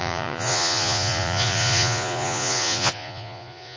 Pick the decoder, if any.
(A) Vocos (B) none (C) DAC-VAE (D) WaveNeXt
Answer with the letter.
A